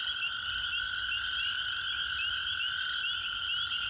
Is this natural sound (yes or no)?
yes